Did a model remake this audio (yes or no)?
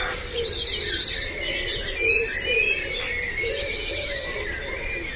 no